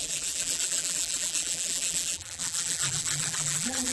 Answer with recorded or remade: remade